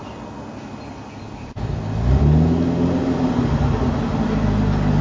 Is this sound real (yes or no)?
yes